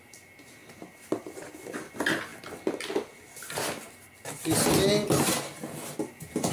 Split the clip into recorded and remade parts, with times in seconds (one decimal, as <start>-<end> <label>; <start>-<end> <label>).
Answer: 0.0-6.5 recorded